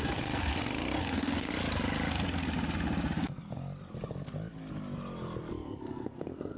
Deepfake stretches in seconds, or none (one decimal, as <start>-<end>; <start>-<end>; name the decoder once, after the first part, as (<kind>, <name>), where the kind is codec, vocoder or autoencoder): 0.0-0.5 (codec, SNAC); 1.0-1.5; 5.5-6.6